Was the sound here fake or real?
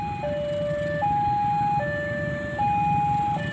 real